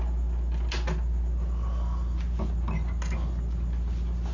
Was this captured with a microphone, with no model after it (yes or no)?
yes